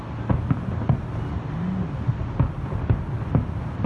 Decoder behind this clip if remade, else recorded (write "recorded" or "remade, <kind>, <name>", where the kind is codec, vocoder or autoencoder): recorded